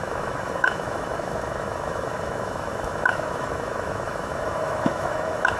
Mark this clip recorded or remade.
remade